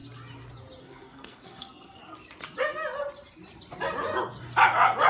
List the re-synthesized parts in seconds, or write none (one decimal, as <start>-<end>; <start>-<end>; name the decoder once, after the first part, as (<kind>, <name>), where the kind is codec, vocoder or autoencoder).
0.8-2.0 (codec, SNAC)